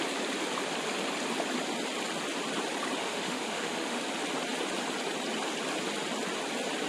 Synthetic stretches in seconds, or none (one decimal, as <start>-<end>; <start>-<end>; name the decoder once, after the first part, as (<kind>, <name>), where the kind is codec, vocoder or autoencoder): 3.0-4.0 (autoencoder, DAC-VAE)